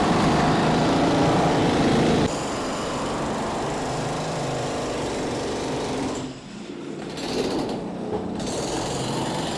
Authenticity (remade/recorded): remade